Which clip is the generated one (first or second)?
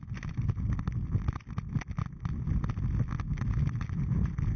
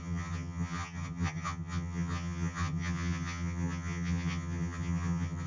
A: second